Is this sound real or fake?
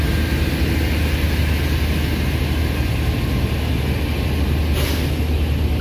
real